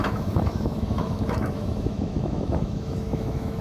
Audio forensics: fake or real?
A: fake